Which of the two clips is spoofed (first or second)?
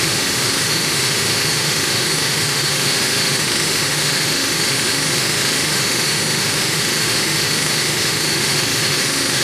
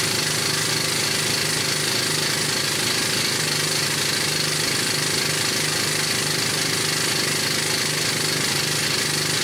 first